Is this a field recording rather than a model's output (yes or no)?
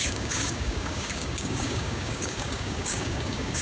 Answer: no